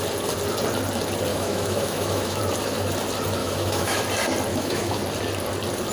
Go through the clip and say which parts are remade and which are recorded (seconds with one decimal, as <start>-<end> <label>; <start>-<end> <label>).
0.0-1.3 recorded; 1.3-2.4 remade; 2.4-3.4 recorded; 3.4-4.0 remade; 4.0-4.5 recorded; 4.5-5.0 remade; 5.0-5.9 recorded